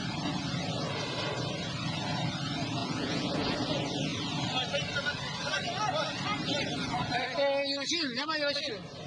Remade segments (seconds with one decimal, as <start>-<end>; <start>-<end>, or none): 2.8-3.3